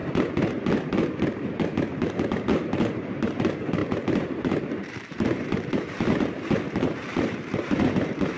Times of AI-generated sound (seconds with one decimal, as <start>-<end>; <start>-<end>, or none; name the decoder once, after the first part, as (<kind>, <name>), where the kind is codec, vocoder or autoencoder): 0.0-8.4 (vocoder, BigVGAN v2)